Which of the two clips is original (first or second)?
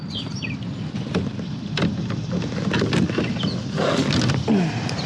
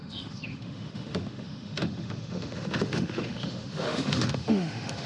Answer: first